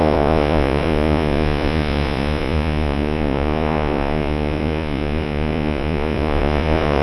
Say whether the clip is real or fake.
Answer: fake